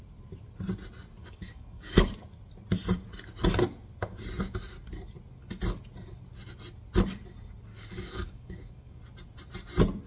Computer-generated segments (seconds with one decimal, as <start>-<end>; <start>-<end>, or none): 1.2-2.1; 7.7-9.0